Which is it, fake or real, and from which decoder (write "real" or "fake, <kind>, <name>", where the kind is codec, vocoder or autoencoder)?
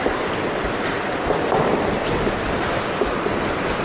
fake, vocoder, BigVGAN v2